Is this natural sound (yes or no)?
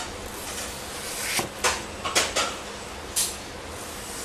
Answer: yes